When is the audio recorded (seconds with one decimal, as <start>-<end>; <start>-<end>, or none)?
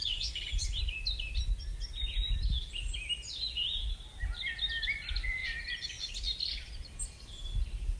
0.8-8.0